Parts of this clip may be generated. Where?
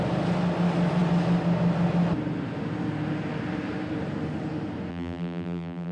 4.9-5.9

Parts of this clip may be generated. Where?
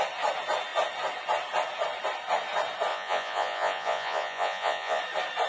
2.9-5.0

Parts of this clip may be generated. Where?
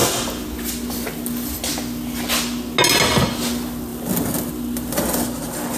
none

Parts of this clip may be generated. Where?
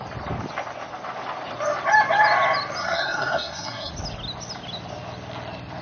2.8-3.9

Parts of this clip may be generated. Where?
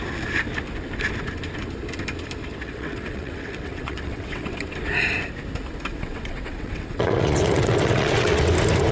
2.5-4.5; 5.9-8.5